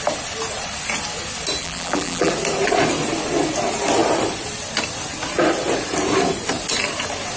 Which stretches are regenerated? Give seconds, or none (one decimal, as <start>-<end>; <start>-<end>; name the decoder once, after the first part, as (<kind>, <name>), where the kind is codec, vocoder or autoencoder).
1.6-2.3 (vocoder, BigVGAN v2)